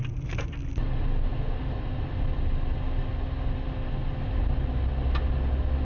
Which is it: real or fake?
real